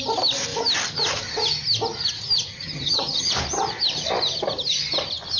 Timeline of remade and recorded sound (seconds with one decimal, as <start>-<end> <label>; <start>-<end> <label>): 0.0-2.5 recorded; 2.5-3.3 remade; 3.3-5.4 recorded